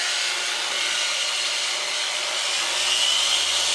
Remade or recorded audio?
recorded